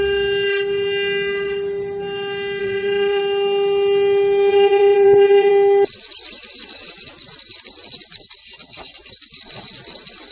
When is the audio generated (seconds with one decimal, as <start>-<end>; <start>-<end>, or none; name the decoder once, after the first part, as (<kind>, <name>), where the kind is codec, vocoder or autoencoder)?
2.6-3.2 (vocoder, WaveNeXt); 4.5-5.5; 8.4-9.1